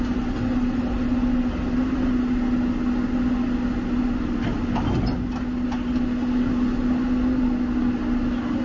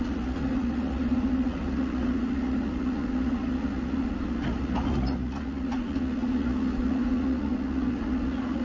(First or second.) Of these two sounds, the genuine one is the first